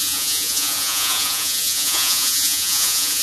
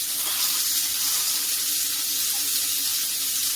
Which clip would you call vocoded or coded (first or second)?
first